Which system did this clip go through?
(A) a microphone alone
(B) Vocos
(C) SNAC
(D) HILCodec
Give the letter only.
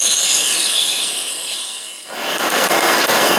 C